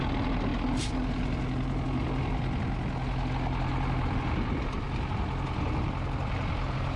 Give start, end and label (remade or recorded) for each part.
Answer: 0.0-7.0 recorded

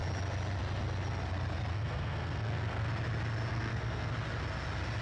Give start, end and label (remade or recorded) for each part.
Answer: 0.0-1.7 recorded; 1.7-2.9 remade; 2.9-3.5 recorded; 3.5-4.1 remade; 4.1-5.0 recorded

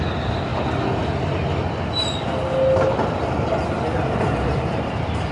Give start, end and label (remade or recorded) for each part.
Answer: 0.0-5.3 recorded

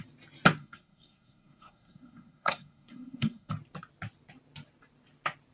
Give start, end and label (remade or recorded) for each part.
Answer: 0.0-0.6 recorded; 0.6-3.5 remade; 3.5-5.5 recorded

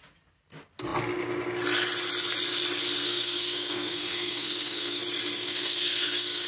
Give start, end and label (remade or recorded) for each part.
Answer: 0.0-3.0 recorded; 3.0-5.0 remade; 5.0-5.5 recorded; 5.5-6.5 remade

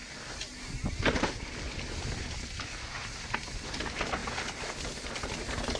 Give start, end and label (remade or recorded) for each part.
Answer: 0.0-5.8 recorded